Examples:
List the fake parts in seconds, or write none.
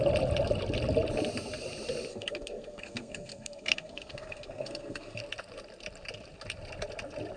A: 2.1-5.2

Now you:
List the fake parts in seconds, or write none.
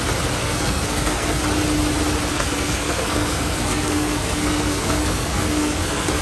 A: 0.4-1.4; 2.3-6.2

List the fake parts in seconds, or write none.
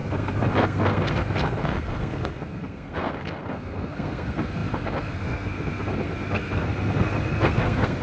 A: 0.0-8.0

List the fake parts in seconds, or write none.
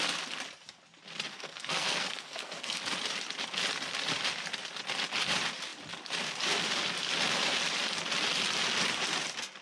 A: 1.3-2.8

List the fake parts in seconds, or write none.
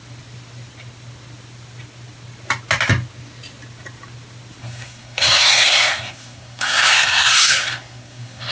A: 4.6-8.5